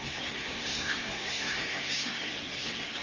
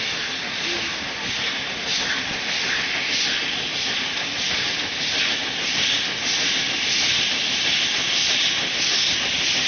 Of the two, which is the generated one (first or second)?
first